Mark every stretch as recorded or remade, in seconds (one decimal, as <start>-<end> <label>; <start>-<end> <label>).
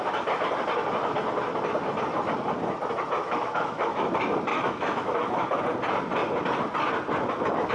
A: 0.0-3.2 recorded; 3.2-4.1 remade; 4.1-4.5 recorded; 4.5-5.6 remade; 5.6-7.7 recorded